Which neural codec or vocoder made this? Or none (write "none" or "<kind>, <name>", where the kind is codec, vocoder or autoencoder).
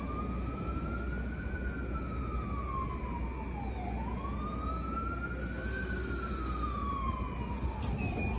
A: none